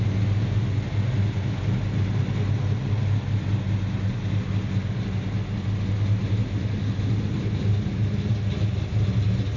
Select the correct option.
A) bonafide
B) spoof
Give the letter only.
A